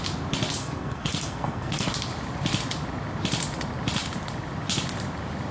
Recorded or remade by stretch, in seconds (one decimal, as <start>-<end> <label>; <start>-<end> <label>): 0.0-0.6 recorded; 0.6-1.9 remade; 1.9-5.5 recorded